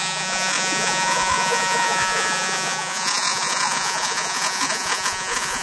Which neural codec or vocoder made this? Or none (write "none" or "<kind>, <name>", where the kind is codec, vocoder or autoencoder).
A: vocoder, Vocos